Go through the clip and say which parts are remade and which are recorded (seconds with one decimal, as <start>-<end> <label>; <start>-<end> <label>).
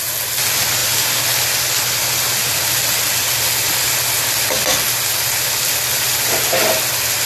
0.0-7.3 recorded